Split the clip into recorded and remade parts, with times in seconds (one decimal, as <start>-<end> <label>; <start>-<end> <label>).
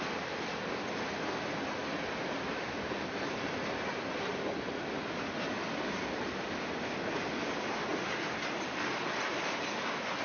0.0-10.2 recorded